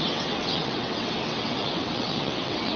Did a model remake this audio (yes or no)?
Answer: yes